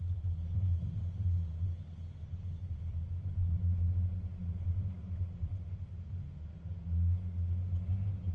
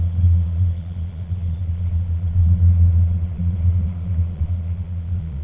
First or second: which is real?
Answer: first